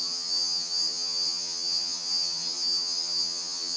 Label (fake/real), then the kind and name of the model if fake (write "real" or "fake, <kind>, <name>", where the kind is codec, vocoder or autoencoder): fake, vocoder, HiFi-GAN